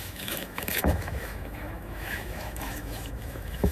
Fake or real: fake